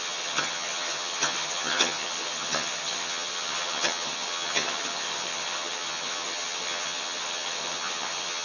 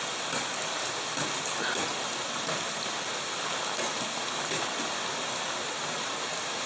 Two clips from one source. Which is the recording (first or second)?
second